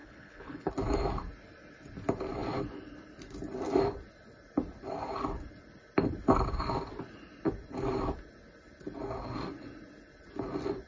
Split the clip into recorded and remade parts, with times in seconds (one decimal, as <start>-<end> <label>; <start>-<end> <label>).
0.0-0.7 remade; 0.7-10.9 recorded